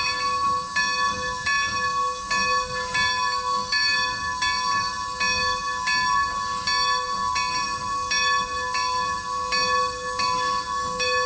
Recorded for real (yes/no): yes